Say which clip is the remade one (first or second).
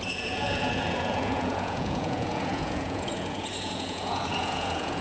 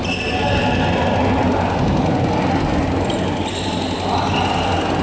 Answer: first